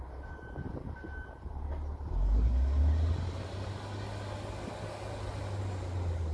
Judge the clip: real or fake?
real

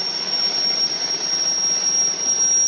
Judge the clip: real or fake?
real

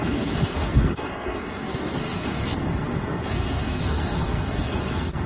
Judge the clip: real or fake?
fake